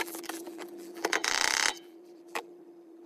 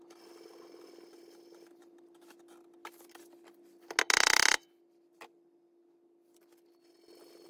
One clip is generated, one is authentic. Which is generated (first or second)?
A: first